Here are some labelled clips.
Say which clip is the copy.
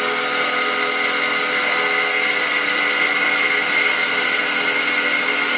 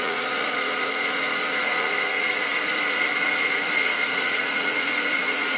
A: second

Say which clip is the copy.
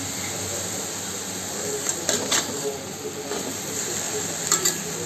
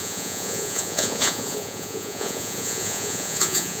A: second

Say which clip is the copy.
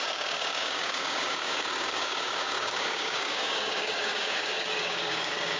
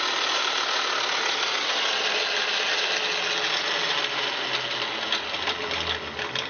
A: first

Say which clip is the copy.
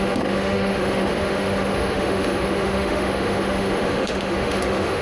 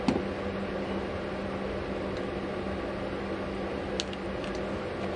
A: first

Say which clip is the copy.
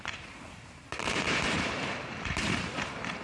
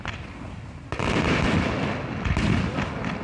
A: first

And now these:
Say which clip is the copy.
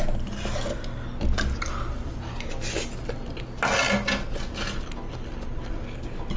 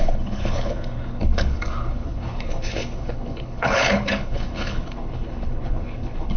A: second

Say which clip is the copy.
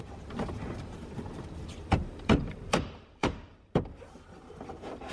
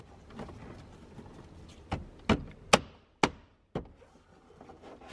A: first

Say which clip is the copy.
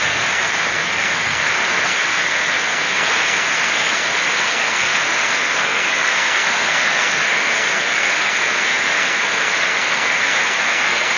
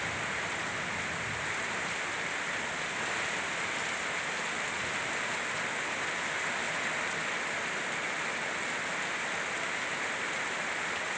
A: first